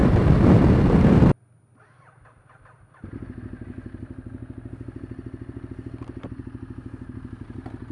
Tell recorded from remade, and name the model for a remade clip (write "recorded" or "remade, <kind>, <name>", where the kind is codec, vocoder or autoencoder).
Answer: recorded